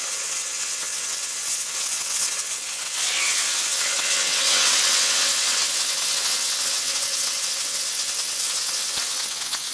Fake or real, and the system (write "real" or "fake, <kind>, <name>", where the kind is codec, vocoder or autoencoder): fake, vocoder, WaveNeXt